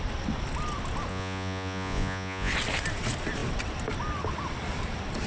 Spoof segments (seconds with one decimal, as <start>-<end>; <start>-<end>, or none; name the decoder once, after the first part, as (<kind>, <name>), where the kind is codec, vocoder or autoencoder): 1.1-2.5 (vocoder, Vocos)